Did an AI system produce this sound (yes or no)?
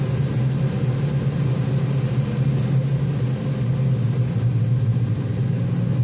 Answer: no